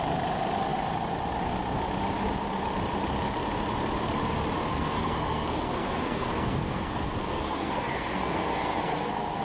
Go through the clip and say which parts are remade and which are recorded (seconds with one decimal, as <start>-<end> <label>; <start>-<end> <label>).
0.0-4.7 recorded; 4.7-9.4 remade